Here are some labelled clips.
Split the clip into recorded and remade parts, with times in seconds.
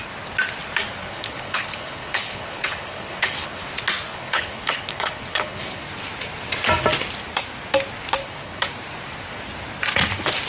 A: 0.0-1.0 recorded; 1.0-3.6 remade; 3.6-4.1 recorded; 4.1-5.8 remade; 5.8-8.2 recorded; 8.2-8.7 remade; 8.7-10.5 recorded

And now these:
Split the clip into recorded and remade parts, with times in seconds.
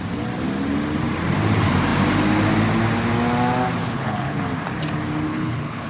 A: 0.0-3.8 recorded; 3.8-4.4 remade; 4.4-5.3 recorded; 5.3-5.9 remade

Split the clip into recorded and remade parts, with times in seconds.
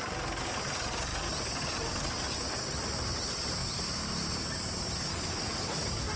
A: 0.0-6.2 recorded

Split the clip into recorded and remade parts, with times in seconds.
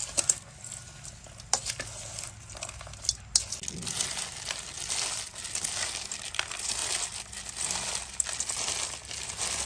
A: 0.0-9.7 recorded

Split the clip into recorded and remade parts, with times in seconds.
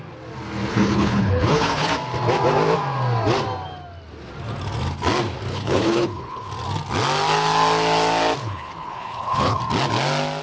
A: 0.0-0.7 recorded; 0.7-1.9 remade; 1.9-5.5 recorded; 5.5-6.5 remade; 6.5-8.4 recorded; 8.4-9.6 remade; 9.6-10.4 recorded